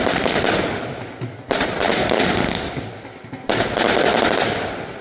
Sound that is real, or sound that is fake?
real